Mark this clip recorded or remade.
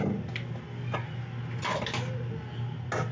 recorded